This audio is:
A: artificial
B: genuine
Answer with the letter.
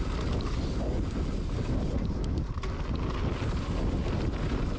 B